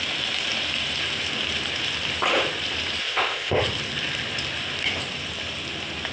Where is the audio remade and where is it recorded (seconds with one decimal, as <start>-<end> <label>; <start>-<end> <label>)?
0.0-3.0 recorded; 3.0-3.6 remade; 3.6-6.1 recorded